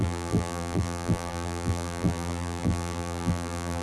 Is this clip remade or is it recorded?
remade